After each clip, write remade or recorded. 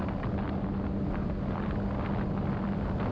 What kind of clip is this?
recorded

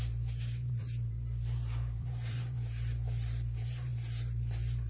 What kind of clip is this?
remade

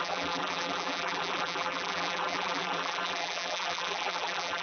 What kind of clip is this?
remade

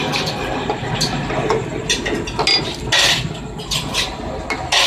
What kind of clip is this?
recorded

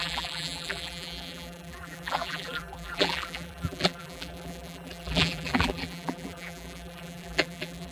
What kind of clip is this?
remade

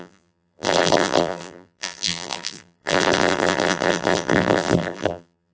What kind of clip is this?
remade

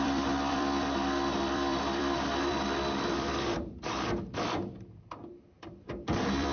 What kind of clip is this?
remade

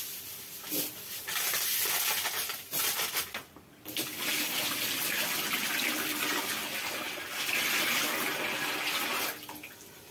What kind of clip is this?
recorded